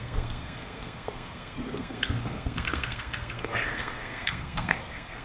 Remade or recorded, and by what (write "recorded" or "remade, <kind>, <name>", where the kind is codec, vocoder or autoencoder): remade, codec, SNAC